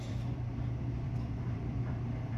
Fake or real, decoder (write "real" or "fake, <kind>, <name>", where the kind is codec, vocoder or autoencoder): fake, vocoder, BigVGAN v2